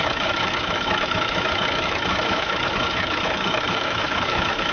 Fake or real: fake